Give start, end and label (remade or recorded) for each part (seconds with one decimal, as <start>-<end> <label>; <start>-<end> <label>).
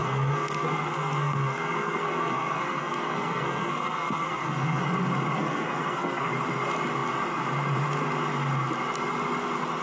0.0-4.8 remade; 4.8-5.4 recorded; 5.4-6.3 remade; 6.3-9.8 recorded